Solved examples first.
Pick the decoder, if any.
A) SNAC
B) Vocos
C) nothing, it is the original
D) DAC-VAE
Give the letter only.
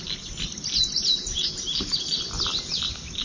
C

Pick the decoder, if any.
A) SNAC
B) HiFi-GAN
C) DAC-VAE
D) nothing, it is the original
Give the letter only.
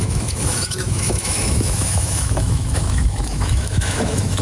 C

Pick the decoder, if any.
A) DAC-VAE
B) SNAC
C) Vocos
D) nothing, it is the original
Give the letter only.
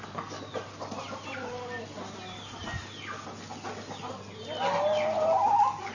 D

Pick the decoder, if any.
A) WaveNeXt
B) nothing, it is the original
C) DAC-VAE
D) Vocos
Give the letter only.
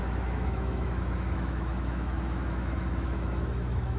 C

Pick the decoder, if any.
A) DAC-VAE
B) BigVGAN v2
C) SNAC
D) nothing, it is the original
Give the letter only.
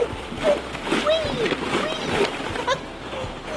D